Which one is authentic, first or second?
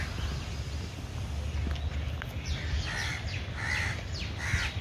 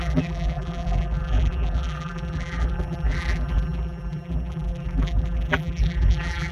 first